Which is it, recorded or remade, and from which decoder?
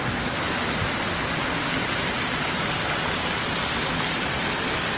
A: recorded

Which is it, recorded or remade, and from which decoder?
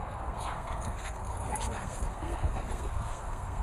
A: remade, codec, SNAC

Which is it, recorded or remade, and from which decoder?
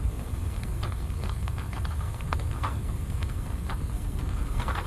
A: remade, codec, SNAC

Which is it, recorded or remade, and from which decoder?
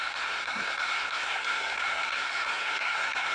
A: remade, codec, SNAC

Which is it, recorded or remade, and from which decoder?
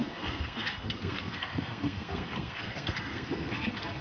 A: remade, codec, SNAC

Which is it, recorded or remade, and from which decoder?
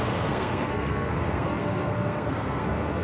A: remade, codec, SNAC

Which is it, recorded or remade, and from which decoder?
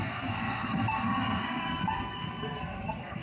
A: remade, codec, SNAC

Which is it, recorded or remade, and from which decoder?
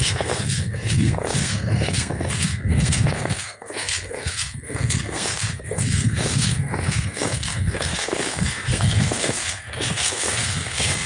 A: remade, codec, SNAC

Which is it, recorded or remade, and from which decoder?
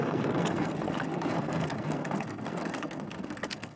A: remade, codec, SNAC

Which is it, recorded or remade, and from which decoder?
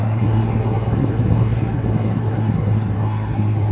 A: remade, codec, SNAC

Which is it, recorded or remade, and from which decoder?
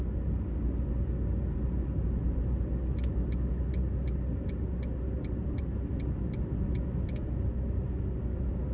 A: recorded